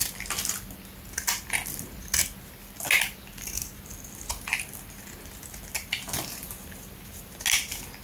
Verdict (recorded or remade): recorded